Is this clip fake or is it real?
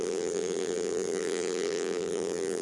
fake